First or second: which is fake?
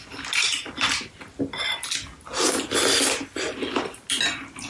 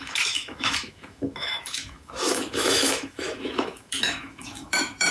second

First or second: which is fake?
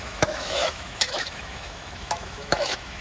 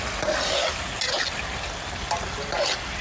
first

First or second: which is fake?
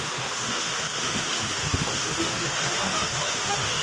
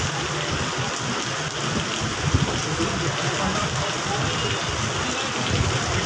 first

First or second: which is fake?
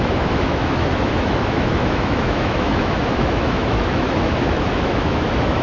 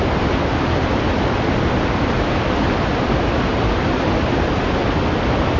first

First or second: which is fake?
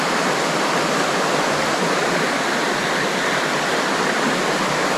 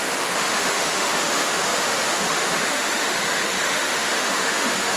second